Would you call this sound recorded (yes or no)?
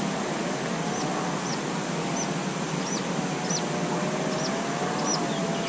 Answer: yes